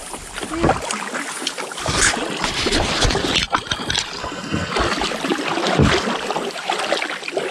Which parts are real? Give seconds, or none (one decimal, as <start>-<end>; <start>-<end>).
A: 0.0-4.2; 4.7-7.5